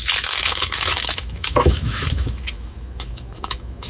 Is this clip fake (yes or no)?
yes